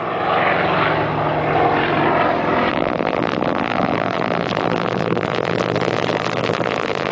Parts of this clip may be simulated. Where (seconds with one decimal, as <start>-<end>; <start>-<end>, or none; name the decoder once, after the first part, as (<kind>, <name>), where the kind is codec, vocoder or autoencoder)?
2.7-7.1 (vocoder, BigVGAN v2)